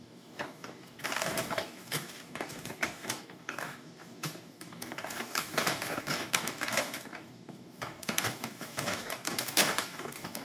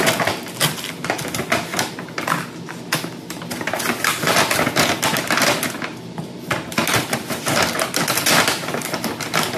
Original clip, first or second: second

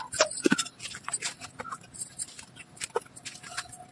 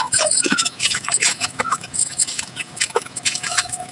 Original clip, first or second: first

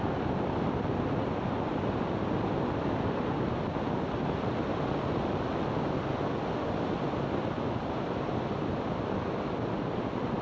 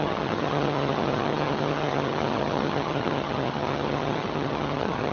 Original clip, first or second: first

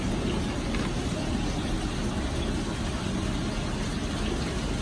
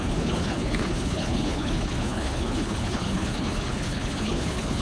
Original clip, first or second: first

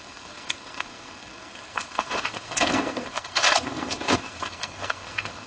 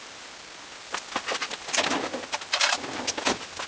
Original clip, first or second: second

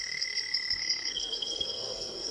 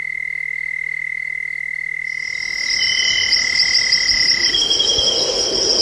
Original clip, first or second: second